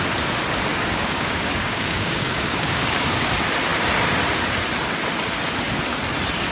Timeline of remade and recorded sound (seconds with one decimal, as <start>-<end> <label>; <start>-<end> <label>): 0.0-0.7 recorded; 0.7-3.3 remade; 3.3-6.5 recorded

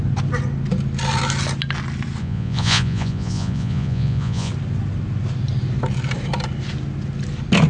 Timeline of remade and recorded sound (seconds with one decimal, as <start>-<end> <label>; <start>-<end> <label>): 0.0-2.2 recorded; 2.2-4.5 remade; 4.5-7.7 recorded

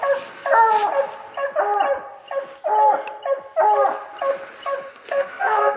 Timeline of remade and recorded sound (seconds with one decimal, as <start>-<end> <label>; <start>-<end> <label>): 0.0-4.9 recorded; 4.9-5.8 remade

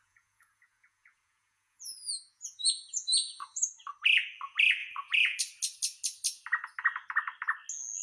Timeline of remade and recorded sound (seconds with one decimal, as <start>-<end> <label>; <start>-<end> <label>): 0.0-3.6 remade; 3.6-4.8 recorded; 4.8-5.4 remade; 5.4-8.0 recorded

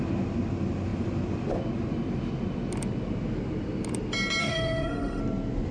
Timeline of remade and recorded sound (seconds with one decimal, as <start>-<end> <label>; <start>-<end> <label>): 0.0-4.4 recorded; 4.4-5.2 remade; 5.2-5.7 recorded